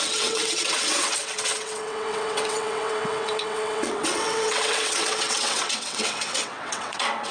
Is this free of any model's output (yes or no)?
no